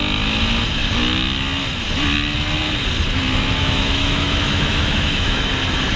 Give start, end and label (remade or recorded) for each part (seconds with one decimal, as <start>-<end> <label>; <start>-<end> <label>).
0.0-3.6 recorded; 3.6-5.5 remade; 5.5-6.0 recorded